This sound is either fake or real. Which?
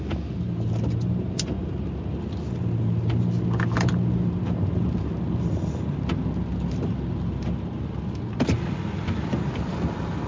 real